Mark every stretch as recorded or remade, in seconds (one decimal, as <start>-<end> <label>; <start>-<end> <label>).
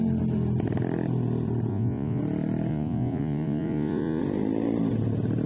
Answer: 0.0-1.7 recorded; 1.7-2.2 remade; 2.2-2.7 recorded; 2.7-4.2 remade; 4.2-5.5 recorded